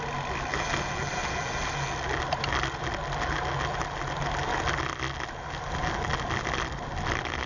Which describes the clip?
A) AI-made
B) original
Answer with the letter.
B